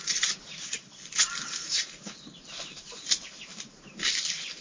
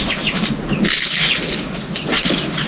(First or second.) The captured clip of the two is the second